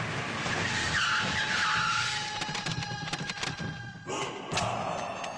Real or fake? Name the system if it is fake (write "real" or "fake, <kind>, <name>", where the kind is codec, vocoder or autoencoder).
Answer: real